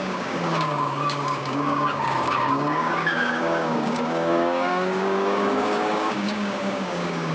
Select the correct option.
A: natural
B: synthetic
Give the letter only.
B